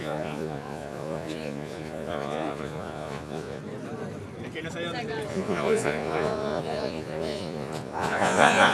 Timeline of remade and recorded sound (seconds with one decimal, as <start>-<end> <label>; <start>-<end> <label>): 0.0-3.6 remade; 3.6-5.3 recorded; 5.3-8.7 remade